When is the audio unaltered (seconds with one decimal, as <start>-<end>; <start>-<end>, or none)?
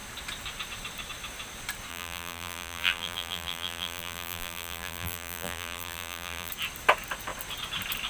0.0-1.9; 6.5-8.1